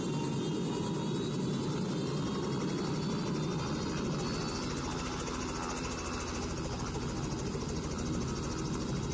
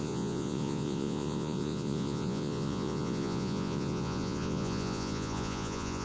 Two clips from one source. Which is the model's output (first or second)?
second